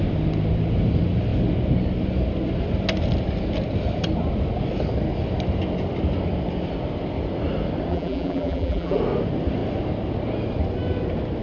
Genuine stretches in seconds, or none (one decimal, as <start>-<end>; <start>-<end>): 0.0-7.9; 9.0-11.4